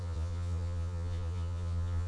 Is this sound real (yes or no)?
no